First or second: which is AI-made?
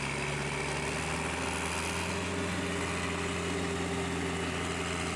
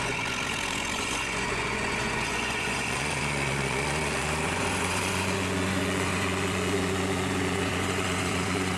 second